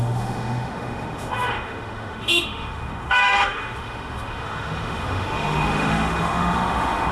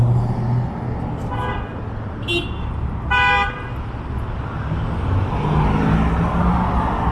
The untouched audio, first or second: second